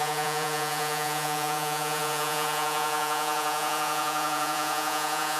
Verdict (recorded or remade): remade